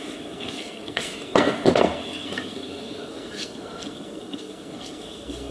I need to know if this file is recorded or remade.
remade